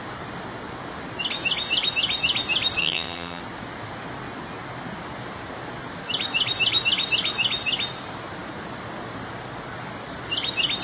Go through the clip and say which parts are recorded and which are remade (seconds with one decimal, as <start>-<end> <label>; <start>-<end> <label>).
0.0-2.8 recorded; 2.8-3.4 remade; 3.4-10.8 recorded